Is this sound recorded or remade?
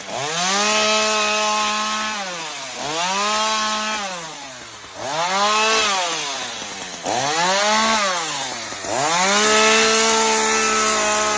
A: recorded